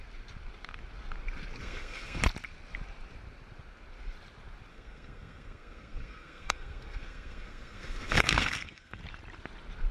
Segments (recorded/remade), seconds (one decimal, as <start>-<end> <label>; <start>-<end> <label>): 0.0-1.6 recorded; 1.6-2.2 remade; 2.2-4.7 recorded; 4.7-9.0 remade; 9.0-9.9 recorded